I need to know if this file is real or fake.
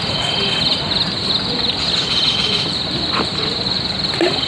real